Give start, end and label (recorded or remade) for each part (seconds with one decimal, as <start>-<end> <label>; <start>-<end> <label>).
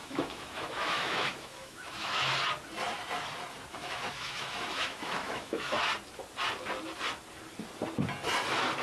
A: 0.0-2.3 remade; 2.3-3.7 recorded; 3.7-5.8 remade; 5.8-8.8 recorded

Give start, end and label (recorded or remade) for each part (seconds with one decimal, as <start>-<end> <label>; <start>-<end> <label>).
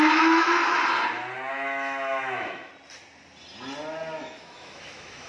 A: 0.0-0.6 remade; 0.6-1.5 recorded; 1.5-2.7 remade; 2.7-4.2 recorded; 4.2-5.3 remade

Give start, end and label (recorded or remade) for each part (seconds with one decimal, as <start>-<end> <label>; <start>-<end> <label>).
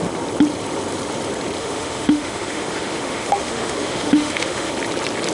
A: 0.0-1.6 recorded; 1.6-4.7 remade; 4.7-5.3 recorded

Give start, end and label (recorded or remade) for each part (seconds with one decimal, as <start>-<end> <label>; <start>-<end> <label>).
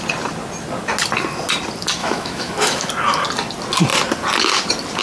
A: 0.0-2.0 recorded; 2.0-2.9 remade; 2.9-5.0 recorded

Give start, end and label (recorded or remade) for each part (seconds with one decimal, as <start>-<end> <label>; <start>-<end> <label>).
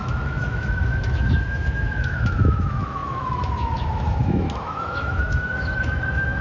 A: 0.0-6.4 remade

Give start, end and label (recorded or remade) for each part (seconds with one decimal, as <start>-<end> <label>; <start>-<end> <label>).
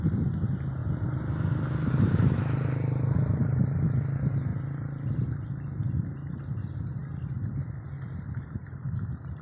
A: 0.0-9.4 recorded